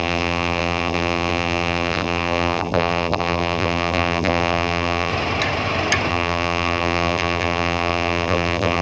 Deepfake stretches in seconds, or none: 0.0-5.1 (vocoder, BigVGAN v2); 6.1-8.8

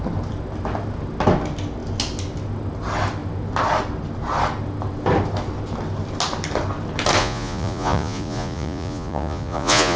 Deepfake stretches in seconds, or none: 7.2-10.0 (vocoder, Vocos)